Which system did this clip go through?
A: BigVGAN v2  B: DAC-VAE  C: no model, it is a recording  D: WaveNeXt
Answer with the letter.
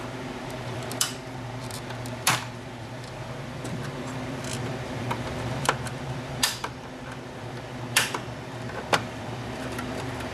A